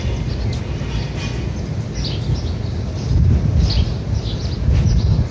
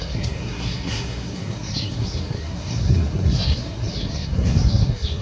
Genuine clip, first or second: first